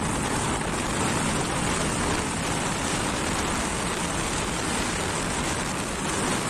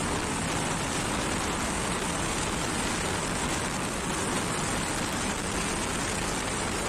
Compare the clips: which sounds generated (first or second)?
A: first